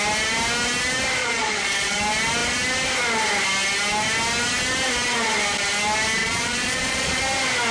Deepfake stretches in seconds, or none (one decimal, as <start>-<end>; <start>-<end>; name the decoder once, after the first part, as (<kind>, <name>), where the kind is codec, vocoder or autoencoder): 1.2-2.0 (vocoder, Vocos); 6.2-7.2